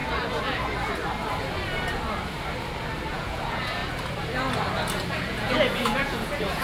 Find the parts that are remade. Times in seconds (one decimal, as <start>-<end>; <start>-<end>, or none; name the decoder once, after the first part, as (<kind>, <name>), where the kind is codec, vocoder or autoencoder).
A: 3.1-3.8 (vocoder, Vocos); 5.1-6.6